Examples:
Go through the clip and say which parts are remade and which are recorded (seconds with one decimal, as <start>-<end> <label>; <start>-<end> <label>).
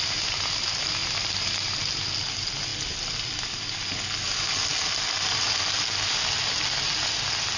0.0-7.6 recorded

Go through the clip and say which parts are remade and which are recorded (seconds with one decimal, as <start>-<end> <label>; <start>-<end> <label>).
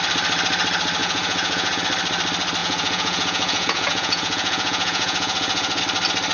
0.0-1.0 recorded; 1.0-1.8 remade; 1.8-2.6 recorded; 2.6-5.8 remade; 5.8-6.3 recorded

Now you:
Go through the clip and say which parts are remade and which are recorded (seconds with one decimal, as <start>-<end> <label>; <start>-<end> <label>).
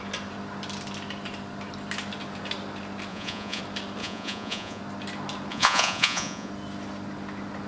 0.0-3.1 recorded; 3.1-3.6 remade; 3.6-4.0 recorded; 4.0-4.8 remade; 4.8-5.5 recorded; 5.5-6.5 remade; 6.5-7.7 recorded